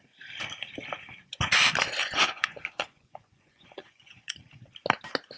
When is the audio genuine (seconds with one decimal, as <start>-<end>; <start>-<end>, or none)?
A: 0.0-2.0; 4.4-5.4

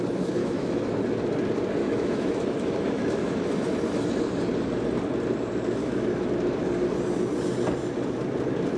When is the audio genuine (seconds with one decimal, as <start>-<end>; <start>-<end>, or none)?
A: 0.0-0.4; 0.9-1.8; 3.5-5.8; 6.3-8.8